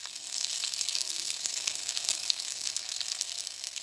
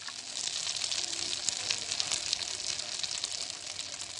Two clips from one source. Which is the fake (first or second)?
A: first